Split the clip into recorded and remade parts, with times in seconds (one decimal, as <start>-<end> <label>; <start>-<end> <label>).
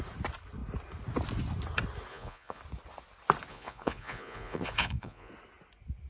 0.0-2.1 recorded; 2.1-2.6 remade; 2.6-3.5 recorded; 3.5-5.3 remade; 5.3-6.1 recorded